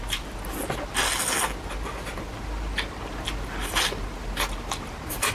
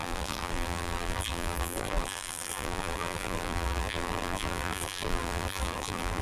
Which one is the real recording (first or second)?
first